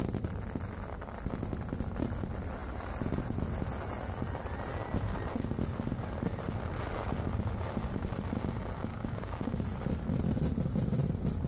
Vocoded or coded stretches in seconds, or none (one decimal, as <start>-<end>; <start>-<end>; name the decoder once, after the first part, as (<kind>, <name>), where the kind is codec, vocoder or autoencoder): 8.9-9.6 (codec, DAC)